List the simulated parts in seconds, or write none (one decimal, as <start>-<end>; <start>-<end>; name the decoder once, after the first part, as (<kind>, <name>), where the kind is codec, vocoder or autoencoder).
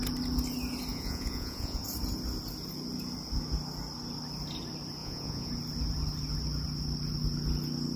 0.9-1.8 (vocoder, Vocos); 5.0-5.5